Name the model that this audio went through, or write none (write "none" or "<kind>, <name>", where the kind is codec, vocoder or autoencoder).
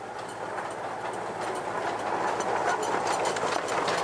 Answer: none